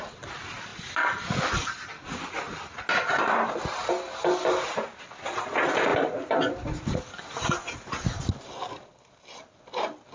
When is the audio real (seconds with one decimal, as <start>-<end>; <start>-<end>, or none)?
0.0-10.1